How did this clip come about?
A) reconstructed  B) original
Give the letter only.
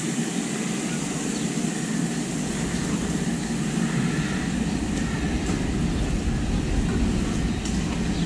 B